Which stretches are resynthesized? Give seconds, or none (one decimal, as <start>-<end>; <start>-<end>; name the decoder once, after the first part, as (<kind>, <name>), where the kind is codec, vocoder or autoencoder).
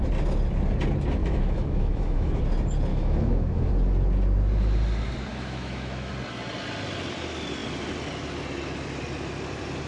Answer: 1.2-2.4 (autoencoder, DAC-VAE); 2.9-3.7; 5.3-6.1